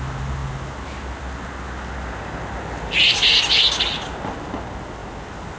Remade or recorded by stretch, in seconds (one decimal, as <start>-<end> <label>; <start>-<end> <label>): 0.0-5.6 recorded